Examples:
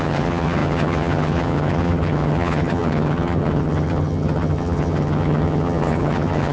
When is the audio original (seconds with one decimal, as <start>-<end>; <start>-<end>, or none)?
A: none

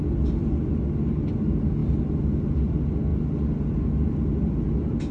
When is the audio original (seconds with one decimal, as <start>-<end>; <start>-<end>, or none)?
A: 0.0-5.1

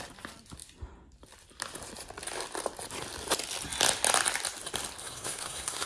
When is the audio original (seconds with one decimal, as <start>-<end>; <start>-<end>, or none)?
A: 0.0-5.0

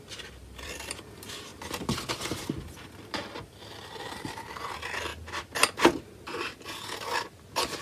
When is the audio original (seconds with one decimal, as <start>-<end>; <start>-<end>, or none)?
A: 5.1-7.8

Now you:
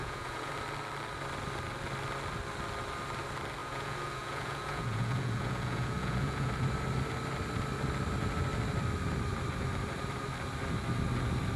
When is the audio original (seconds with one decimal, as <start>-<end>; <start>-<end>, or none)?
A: 0.5-3.6; 6.5-11.6